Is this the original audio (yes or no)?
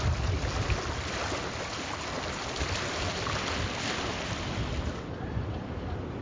yes